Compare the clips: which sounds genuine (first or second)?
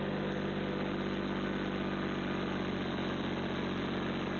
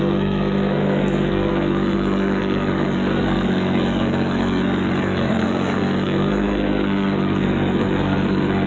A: first